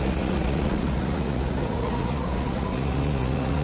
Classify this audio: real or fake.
fake